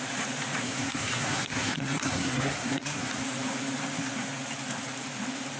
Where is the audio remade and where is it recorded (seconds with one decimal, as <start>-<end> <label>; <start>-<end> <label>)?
0.0-0.6 recorded; 0.6-3.1 remade; 3.1-5.6 recorded